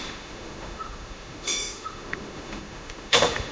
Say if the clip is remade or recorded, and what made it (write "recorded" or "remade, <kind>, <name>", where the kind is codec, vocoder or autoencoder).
remade, autoencoder, DAC-VAE